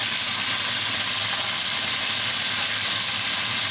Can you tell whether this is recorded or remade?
recorded